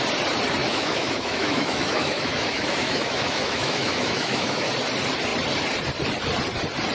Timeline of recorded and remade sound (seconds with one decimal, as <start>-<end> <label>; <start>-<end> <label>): 0.0-0.6 recorded; 0.6-4.7 remade; 4.7-6.9 recorded